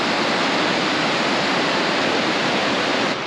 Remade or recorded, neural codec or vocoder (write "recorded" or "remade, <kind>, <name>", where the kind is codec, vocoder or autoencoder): recorded